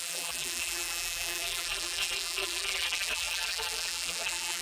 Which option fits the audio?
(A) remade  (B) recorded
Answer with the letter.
A